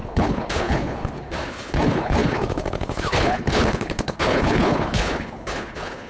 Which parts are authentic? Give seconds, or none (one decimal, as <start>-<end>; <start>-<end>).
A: none